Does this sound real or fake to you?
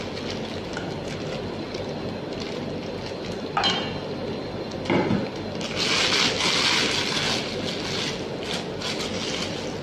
real